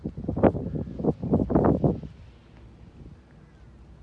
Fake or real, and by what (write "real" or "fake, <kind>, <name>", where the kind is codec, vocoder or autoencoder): real